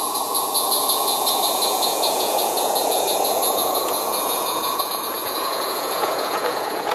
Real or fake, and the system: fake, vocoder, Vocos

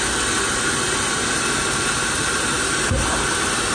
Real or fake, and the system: real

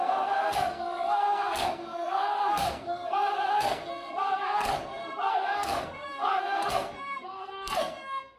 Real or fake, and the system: fake, codec, SNAC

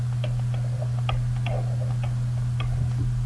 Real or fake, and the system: real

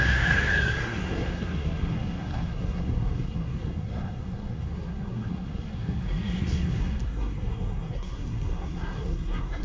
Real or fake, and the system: fake, codec, SNAC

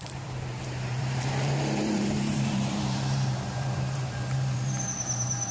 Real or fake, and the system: fake, vocoder, BigVGAN v2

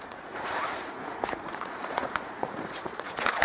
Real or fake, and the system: fake, vocoder, Vocos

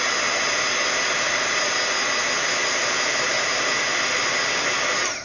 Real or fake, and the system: real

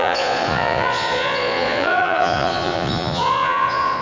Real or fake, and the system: fake, vocoder, Vocos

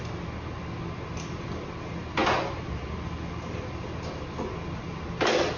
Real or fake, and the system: real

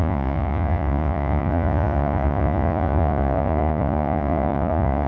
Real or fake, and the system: fake, vocoder, Vocos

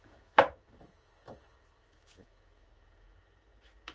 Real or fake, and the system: fake, autoencoder, DAC-VAE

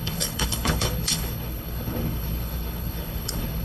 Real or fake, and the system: fake, codec, HILCodec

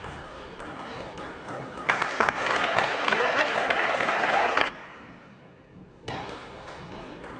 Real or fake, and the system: fake, codec, SNAC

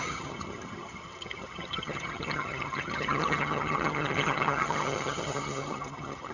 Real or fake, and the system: fake, vocoder, HiFi-GAN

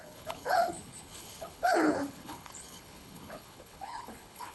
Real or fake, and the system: fake, codec, HILCodec